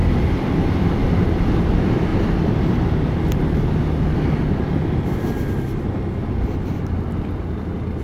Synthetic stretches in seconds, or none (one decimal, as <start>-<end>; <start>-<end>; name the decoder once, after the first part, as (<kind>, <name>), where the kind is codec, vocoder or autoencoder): 0.0-1.5 (vocoder, BigVGAN v2)

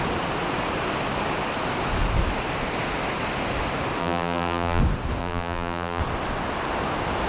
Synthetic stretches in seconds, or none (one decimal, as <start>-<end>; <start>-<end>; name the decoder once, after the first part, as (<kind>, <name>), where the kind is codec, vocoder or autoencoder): 4.0-4.8 (vocoder, BigVGAN v2); 5.2-6.0